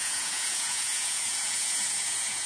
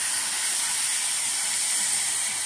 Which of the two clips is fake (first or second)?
first